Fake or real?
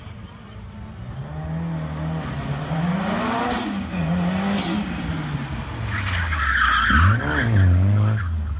real